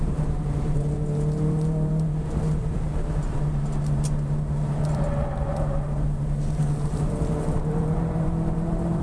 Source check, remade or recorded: remade